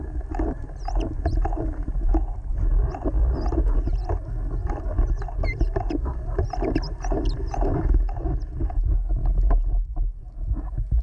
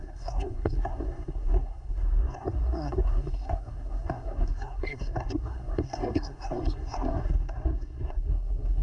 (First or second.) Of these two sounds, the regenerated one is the second